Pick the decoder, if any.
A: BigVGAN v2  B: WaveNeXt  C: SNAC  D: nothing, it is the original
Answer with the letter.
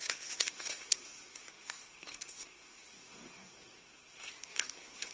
C